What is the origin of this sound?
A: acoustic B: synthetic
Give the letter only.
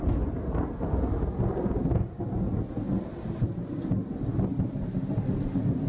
A